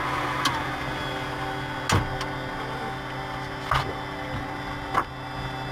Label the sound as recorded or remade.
recorded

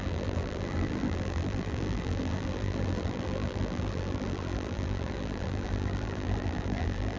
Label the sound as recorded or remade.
remade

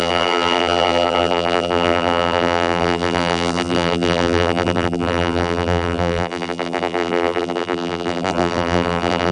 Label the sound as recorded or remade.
remade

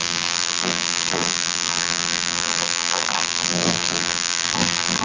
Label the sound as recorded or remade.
remade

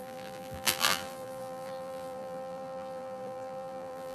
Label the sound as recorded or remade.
remade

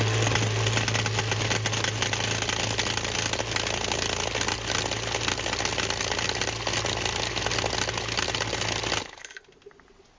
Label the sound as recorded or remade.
recorded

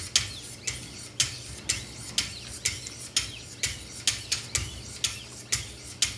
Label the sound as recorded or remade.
recorded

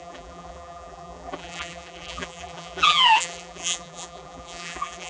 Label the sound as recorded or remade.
remade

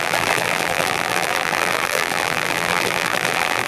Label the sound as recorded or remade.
remade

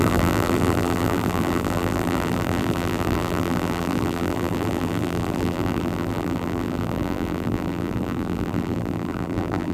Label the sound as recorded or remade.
remade